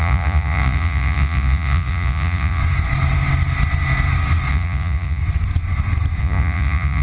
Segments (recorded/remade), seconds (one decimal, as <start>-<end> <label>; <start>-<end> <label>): 0.0-2.6 remade; 2.6-4.5 recorded; 4.5-5.2 remade; 5.2-6.2 recorded; 6.2-7.0 remade